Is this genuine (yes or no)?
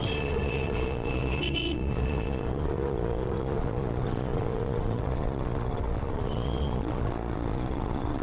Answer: no